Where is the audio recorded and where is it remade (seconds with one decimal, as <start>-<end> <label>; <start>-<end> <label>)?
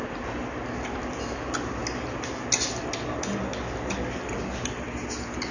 0.0-5.5 recorded